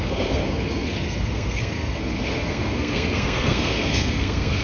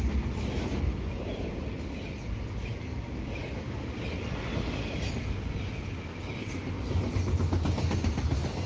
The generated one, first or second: first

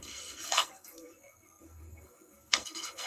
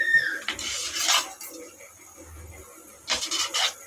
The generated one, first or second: first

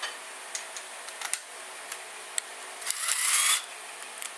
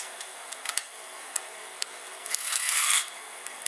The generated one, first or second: second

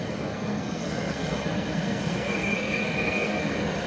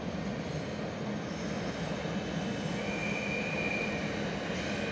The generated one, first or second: first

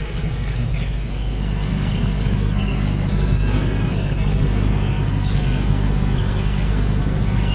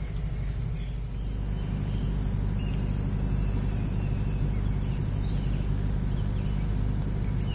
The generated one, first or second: first